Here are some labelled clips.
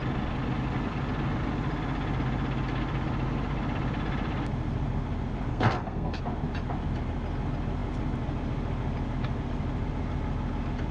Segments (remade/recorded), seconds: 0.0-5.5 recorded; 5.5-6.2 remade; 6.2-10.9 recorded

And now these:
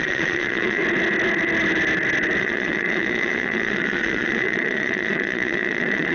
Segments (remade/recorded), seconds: 0.0-0.8 remade; 0.8-2.4 recorded; 2.4-6.1 remade